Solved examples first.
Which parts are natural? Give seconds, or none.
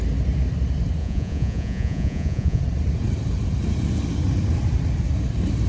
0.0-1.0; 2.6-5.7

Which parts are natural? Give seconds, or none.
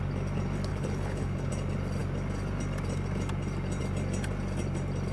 0.0-0.7; 1.5-5.1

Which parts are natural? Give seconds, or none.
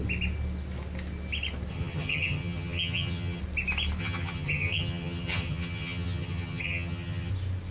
0.0-1.7; 3.4-4.0; 7.3-7.7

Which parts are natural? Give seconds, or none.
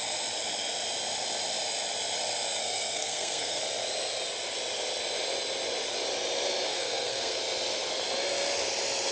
0.0-2.6; 3.6-6.7; 7.4-9.1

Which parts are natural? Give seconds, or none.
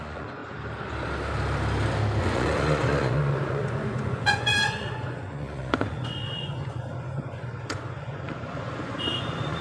0.4-2.2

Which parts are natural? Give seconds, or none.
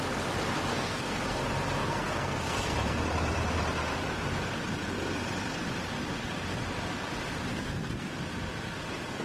0.0-0.7; 1.4-1.8; 3.0-7.5; 8.1-9.2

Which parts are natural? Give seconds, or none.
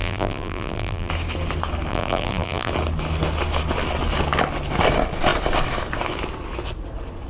1.1-1.9; 2.7-7.3